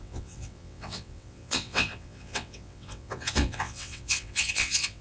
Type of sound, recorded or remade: remade